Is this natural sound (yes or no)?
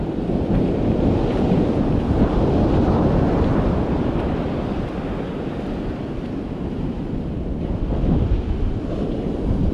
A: no